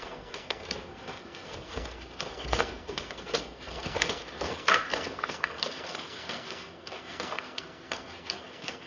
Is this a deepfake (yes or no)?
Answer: yes